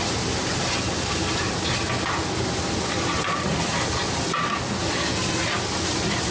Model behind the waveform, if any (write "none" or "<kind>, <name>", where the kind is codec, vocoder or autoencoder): none